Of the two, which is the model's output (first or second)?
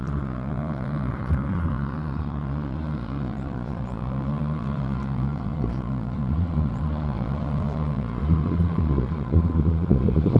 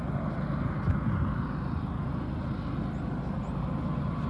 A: first